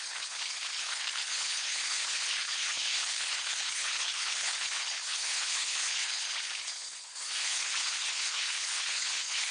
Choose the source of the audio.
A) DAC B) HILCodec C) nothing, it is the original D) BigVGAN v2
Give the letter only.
B